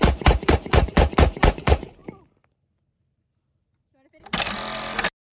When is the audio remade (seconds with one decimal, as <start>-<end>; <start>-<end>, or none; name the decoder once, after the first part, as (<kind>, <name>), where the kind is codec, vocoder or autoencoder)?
0.0-2.0 (vocoder, Vocos)